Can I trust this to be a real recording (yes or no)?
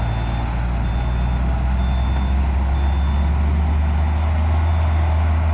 yes